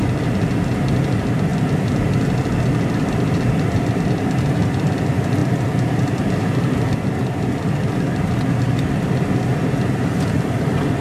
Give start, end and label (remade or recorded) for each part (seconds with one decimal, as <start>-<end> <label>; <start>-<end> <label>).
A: 0.0-11.0 recorded